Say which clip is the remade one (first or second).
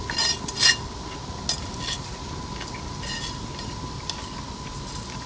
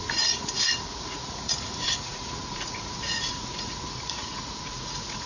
second